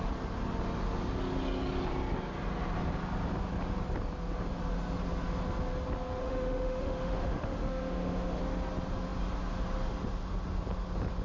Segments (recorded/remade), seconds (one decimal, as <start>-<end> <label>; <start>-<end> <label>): 0.0-6.2 recorded; 6.2-8.4 remade; 8.4-11.2 recorded